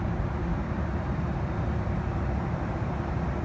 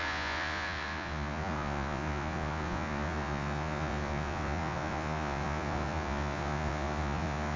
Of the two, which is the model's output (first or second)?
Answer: second